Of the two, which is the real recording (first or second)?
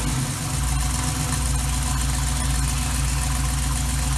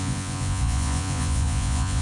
first